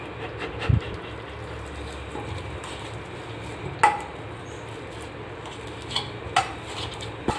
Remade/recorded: recorded